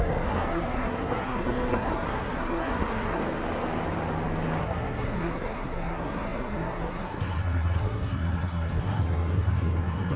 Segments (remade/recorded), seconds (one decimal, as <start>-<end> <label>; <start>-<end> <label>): 0.0-3.2 remade; 3.2-4.6 recorded; 4.6-10.2 remade